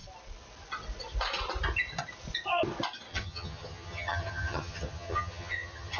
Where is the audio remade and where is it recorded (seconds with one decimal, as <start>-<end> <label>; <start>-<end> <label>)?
0.0-3.1 recorded; 3.1-6.0 remade